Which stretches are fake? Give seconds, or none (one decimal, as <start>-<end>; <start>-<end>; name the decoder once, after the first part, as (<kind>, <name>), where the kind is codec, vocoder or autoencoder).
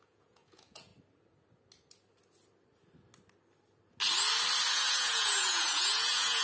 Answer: 0.0-0.9 (vocoder, Vocos); 4.7-6.4